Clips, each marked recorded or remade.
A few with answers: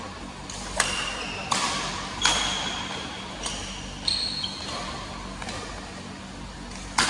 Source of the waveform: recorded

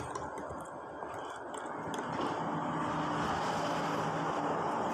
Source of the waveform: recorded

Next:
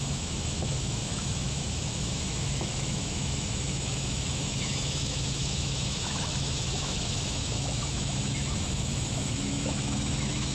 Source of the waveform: remade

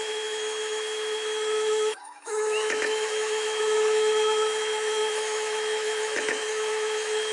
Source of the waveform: remade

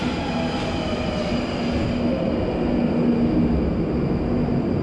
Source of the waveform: recorded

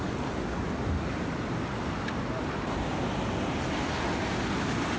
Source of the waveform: recorded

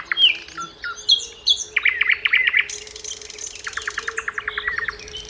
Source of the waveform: recorded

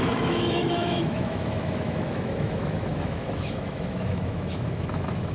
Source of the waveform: remade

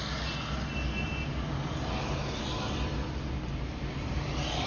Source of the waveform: recorded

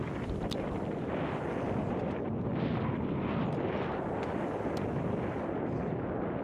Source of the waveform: recorded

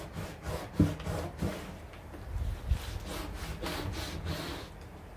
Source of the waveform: recorded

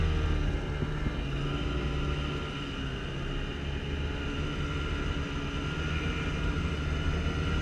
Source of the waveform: recorded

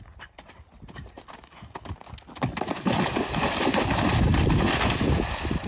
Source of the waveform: recorded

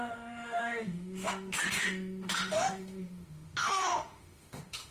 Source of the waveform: remade